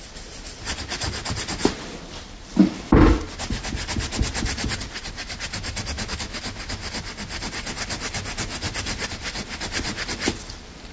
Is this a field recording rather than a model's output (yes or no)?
yes